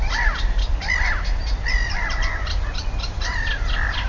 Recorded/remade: recorded